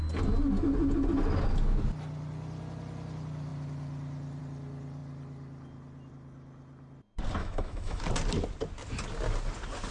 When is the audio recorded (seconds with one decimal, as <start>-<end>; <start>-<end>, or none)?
0.0-7.4; 8.0-9.9